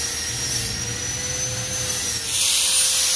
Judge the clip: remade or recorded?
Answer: recorded